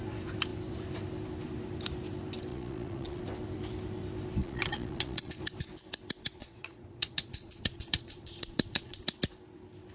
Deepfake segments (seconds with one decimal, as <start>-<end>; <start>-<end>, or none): 2.5-3.2; 4.4-5.3; 6.4-9.0